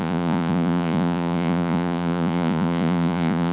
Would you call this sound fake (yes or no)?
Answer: yes